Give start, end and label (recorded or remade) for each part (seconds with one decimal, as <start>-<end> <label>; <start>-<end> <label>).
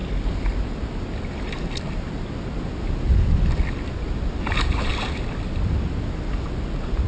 0.0-7.1 recorded